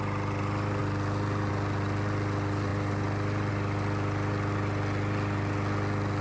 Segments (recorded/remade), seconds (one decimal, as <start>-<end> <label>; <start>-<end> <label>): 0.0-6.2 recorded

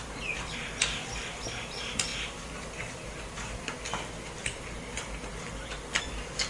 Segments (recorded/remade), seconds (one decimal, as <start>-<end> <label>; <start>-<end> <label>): 0.0-6.5 recorded

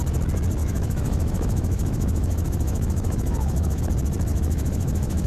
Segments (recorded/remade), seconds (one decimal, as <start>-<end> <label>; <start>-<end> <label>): 0.0-0.6 recorded; 0.6-3.8 remade; 3.8-4.3 recorded; 4.3-5.3 remade

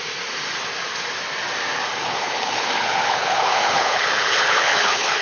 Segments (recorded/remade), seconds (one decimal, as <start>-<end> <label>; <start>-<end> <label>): 0.0-1.9 recorded; 1.9-5.2 remade

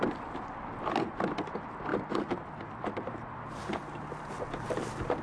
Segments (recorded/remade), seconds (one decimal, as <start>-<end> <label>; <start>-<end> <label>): 0.0-5.2 recorded

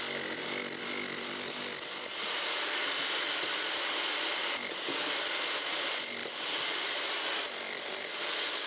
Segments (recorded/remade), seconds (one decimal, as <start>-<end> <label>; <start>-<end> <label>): 0.0-6.2 recorded; 6.2-7.4 remade; 7.4-8.7 recorded

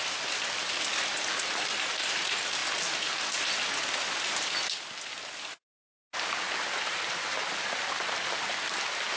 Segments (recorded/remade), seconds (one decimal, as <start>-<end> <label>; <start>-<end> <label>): 0.0-9.2 recorded

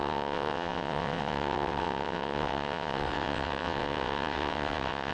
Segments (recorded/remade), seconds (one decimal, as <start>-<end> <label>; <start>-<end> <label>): 0.0-5.1 remade